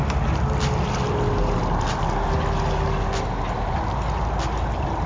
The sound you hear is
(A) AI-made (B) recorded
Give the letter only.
B